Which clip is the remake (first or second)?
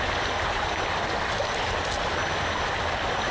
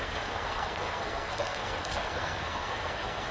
second